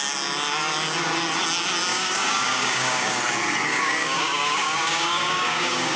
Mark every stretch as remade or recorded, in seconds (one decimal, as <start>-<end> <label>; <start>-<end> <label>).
0.0-1.9 recorded; 1.9-3.2 remade; 3.2-3.7 recorded; 3.7-6.0 remade